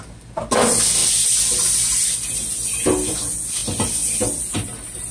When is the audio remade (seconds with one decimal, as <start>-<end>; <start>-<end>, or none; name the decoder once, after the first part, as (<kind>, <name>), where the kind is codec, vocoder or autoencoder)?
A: none